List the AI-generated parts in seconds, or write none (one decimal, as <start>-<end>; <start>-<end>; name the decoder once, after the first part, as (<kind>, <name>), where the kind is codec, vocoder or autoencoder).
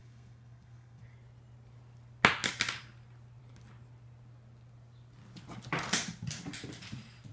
0.0-1.0 (codec, SNAC)